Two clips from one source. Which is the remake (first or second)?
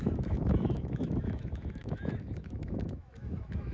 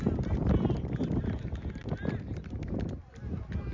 first